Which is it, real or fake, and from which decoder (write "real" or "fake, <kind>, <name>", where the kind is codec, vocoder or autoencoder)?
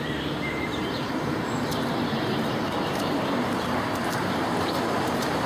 fake, vocoder, BigVGAN v2